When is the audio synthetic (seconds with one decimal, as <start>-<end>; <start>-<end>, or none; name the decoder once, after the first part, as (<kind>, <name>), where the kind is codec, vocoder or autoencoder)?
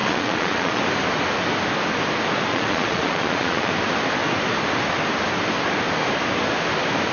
0.0-0.8 (vocoder, Vocos); 2.5-3.7